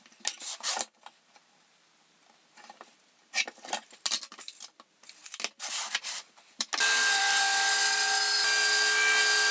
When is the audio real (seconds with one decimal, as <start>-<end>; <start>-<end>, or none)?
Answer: 0.0-9.5